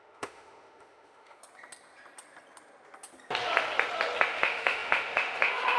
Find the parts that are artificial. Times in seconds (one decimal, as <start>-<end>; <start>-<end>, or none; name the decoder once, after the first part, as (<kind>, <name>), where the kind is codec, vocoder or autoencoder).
0.0-1.4 (autoencoder, DAC-VAE); 4.2-5.8